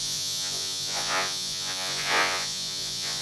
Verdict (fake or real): fake